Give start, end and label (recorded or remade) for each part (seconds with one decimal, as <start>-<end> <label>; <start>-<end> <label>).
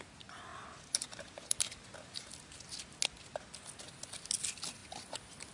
0.0-5.5 recorded